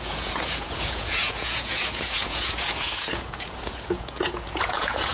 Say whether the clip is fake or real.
fake